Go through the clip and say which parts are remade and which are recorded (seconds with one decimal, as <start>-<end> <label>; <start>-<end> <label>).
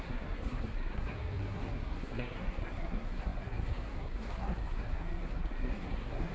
0.0-6.3 remade